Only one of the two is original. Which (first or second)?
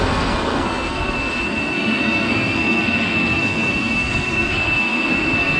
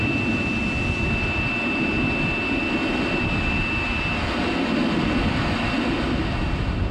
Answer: second